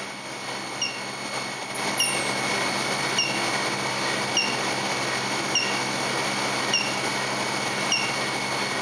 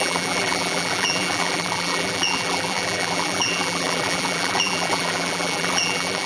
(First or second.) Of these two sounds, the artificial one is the second